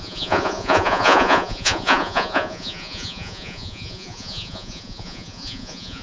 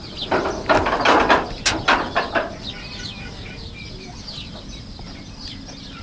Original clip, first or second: second